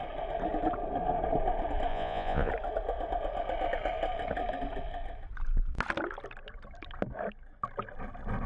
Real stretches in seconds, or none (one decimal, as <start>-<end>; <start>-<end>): 0.0-1.9; 2.5-8.5

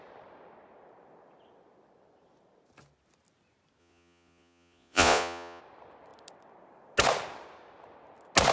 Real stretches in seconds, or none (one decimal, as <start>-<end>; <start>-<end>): 0.0-3.8; 5.6-8.5

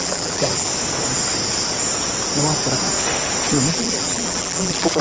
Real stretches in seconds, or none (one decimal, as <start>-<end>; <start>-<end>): 0.7-3.7

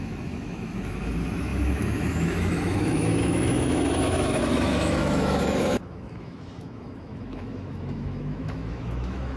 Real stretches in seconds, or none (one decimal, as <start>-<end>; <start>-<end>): none